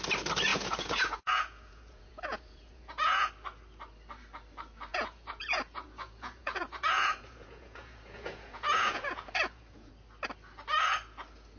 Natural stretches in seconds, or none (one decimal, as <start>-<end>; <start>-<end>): 0.0-0.5; 3.3-4.9; 9.9-11.6